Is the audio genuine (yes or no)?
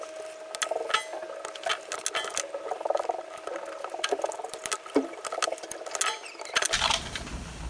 yes